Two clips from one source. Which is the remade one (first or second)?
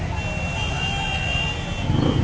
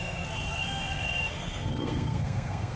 second